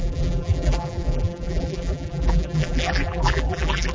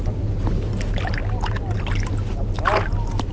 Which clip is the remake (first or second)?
first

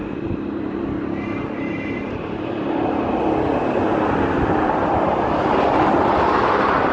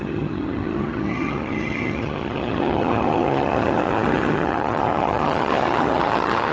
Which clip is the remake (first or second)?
second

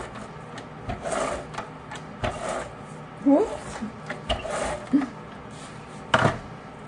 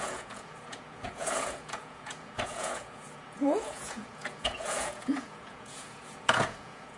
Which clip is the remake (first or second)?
second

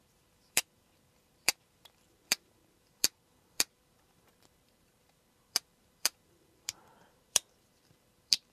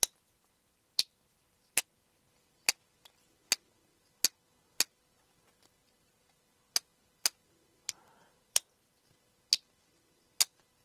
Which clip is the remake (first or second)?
first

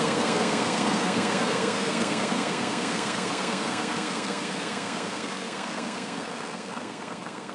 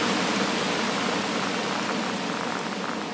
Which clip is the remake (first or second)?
first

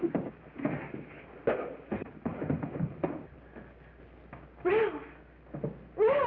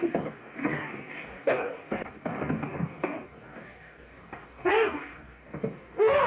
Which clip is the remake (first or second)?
second